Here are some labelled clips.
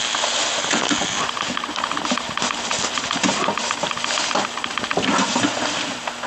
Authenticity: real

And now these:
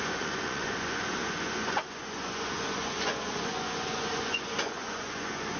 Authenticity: fake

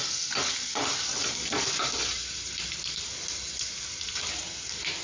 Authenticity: real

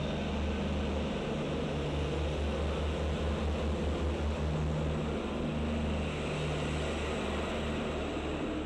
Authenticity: real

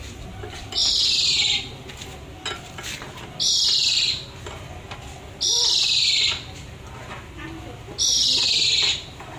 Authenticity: real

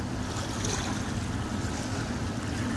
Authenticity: real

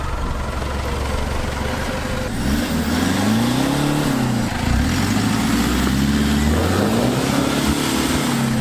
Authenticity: real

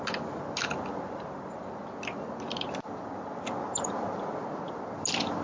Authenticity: real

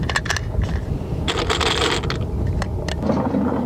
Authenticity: real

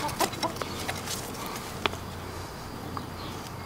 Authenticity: real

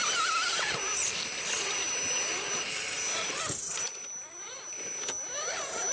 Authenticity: real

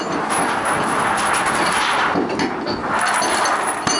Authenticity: real